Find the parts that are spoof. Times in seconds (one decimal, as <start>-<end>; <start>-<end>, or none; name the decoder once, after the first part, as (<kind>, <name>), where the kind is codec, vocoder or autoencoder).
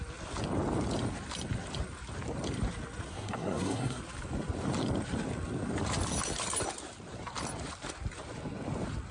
3.1-4.0 (codec, SNAC)